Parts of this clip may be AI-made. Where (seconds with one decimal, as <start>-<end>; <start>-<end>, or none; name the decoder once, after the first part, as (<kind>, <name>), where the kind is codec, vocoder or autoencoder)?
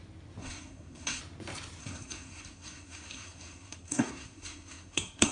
0.4-1.2 (codec, SNAC); 1.8-5.3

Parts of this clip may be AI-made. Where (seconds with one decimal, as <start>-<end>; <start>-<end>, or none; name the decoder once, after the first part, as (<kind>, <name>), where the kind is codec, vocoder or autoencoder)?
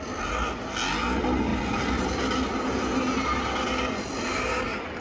none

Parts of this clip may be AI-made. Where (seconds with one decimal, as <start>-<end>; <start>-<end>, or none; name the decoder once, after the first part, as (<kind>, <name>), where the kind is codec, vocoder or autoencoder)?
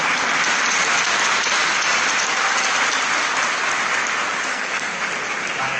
4.5-5.0 (codec, SNAC)